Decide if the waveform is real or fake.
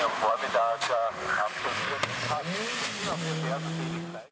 fake